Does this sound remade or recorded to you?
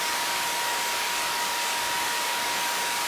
remade